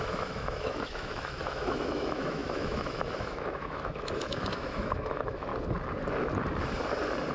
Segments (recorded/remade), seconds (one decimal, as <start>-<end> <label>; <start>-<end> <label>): 0.0-5.5 remade; 5.5-7.3 recorded